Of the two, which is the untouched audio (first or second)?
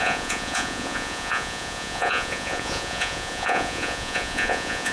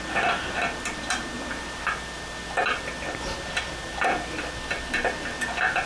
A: second